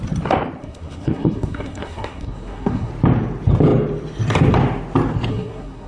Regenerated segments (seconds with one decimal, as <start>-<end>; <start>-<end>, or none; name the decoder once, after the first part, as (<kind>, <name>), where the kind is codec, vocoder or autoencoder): 0.6-2.9 (codec, SNAC); 5.3-5.9